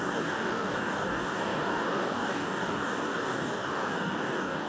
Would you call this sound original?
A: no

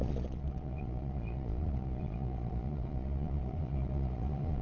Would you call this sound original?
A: no